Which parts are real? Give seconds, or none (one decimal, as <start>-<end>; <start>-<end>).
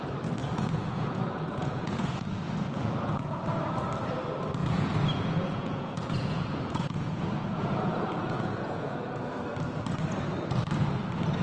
0.0-0.4; 3.4-4.6; 9.2-11.4